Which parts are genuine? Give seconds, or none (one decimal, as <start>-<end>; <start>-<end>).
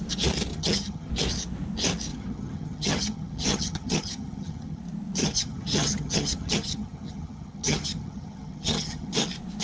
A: 0.0-0.5; 1.1-2.1; 4.8-5.2; 9.1-9.6